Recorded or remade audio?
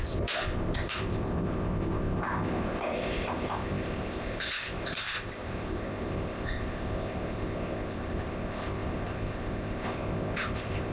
remade